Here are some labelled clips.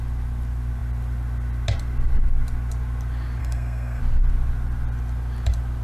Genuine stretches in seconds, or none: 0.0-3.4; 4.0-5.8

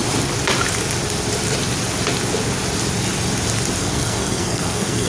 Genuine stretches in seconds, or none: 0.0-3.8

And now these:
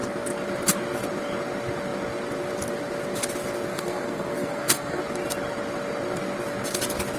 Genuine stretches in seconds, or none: 0.0-3.7; 5.0-7.2